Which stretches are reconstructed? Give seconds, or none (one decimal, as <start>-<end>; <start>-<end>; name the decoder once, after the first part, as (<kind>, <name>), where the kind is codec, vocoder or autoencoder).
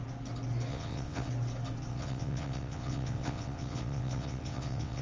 0.7-1.3 (vocoder, WaveNeXt); 1.9-5.0